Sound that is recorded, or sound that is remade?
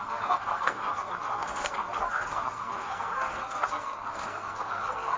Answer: remade